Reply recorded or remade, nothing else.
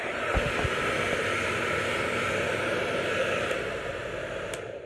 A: recorded